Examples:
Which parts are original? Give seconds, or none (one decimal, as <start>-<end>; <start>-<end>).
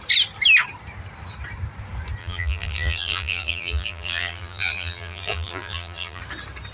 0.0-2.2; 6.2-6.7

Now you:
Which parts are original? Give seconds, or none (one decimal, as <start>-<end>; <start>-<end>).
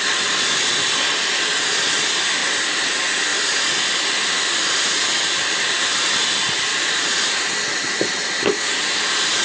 0.0-2.4; 2.9-6.7; 7.5-8.2; 9.0-9.4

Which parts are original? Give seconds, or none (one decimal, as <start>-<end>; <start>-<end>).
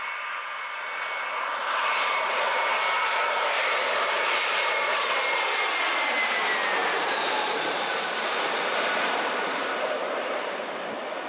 0.0-1.6; 5.6-6.8; 10.5-11.3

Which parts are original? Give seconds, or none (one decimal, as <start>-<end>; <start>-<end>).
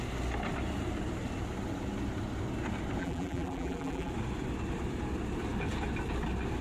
0.0-3.0; 4.1-6.6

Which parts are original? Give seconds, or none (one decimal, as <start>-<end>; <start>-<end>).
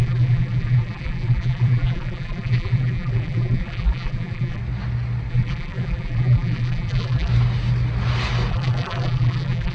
4.6-5.3; 7.3-8.5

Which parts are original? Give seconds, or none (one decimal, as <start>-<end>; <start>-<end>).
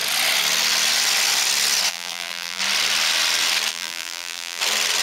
0.0-1.9; 2.6-3.7; 4.6-5.0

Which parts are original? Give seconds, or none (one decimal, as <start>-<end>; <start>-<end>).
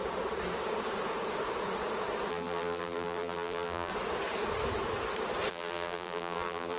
0.0-2.3; 3.9-5.5